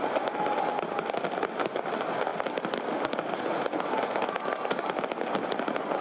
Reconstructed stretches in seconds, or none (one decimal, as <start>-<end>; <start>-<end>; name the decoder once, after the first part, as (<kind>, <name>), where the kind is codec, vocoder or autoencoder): none